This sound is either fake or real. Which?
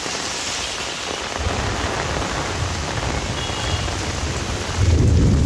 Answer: real